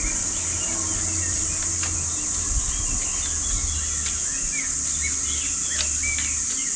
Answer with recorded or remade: recorded